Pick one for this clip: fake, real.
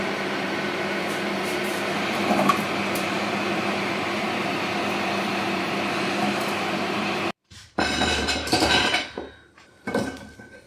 fake